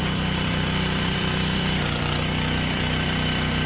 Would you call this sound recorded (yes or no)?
no